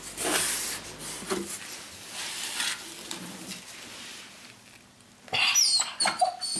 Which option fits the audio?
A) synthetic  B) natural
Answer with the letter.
B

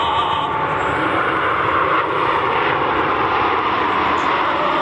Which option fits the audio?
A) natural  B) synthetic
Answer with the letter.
A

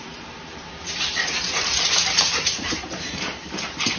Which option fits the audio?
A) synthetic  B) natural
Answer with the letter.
A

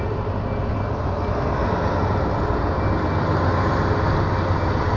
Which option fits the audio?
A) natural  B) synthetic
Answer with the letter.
A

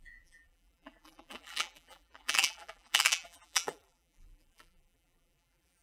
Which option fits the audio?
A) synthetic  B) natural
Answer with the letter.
A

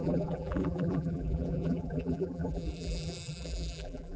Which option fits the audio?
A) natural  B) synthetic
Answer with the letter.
B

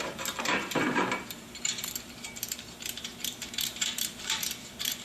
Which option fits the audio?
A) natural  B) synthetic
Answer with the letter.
B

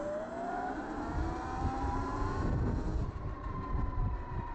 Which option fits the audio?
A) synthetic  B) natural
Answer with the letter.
A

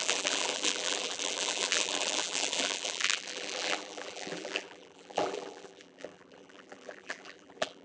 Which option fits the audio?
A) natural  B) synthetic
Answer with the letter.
B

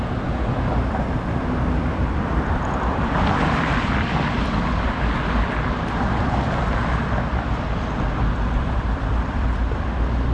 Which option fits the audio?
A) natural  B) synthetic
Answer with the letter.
B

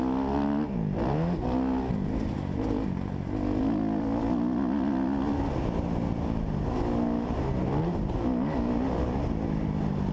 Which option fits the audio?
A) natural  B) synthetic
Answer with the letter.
A